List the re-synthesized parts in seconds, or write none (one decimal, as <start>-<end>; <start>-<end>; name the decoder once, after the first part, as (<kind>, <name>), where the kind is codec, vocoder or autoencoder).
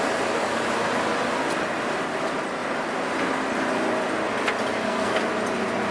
4.8-5.3 (codec, SNAC)